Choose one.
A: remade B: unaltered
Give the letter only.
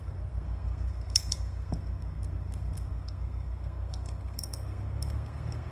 A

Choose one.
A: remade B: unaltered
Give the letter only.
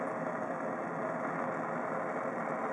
B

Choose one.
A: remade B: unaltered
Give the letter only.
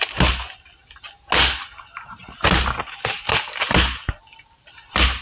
B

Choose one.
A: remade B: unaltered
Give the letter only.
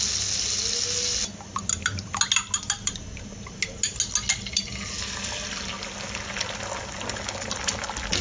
B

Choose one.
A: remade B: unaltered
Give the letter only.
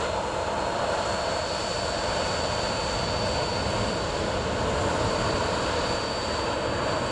B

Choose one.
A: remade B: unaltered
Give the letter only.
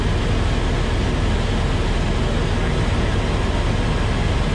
B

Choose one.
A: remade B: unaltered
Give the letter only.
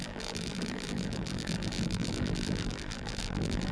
A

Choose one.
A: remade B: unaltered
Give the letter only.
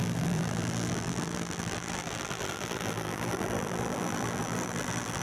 A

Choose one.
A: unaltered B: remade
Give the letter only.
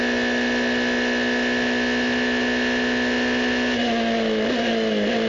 A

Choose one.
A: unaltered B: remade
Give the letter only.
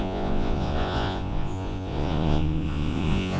B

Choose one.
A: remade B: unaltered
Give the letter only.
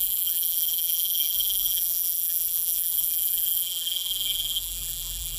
A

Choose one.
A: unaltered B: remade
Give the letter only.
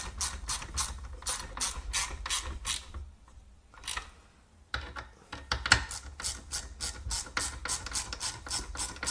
A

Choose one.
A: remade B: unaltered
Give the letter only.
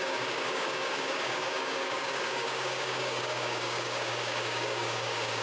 A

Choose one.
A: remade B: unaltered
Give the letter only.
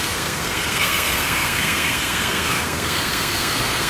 A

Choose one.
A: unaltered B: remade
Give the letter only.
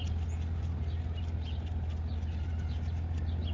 A